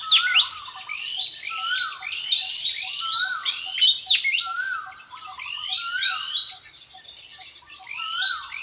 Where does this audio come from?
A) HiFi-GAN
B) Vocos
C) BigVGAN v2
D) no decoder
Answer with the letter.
D